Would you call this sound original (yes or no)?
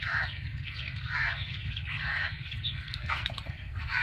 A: no